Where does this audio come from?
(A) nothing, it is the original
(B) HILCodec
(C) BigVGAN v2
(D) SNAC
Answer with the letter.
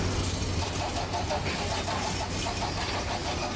A